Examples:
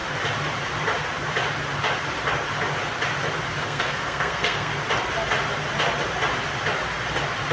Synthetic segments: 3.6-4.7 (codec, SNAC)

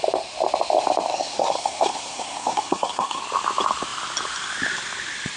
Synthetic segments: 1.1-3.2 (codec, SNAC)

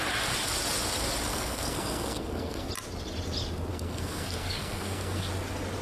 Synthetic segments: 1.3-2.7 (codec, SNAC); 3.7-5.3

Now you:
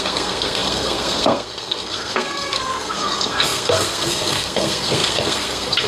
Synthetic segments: 0.0-5.9 (codec, SNAC)